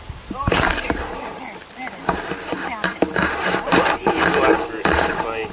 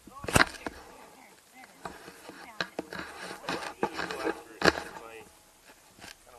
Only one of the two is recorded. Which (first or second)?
second